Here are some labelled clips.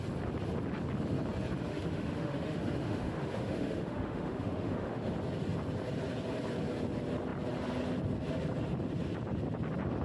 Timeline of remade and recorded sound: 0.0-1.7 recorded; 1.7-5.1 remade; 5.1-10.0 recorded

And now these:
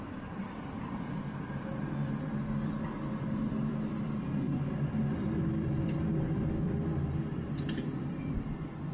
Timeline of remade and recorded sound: 0.0-0.4 remade; 0.4-2.7 recorded; 2.7-8.9 remade

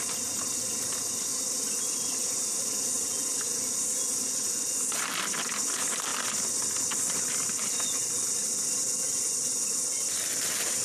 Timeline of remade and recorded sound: 0.0-10.8 recorded

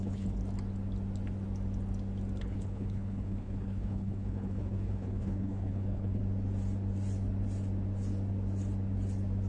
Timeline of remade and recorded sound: 0.0-0.4 remade; 0.4-2.4 recorded; 2.4-6.2 remade; 6.2-9.5 recorded

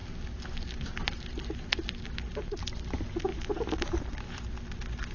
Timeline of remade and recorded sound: 0.0-5.1 recorded

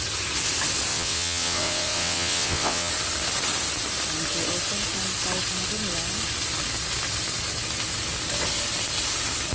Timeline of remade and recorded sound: 0.0-0.9 recorded; 0.9-2.9 remade; 2.9-9.5 recorded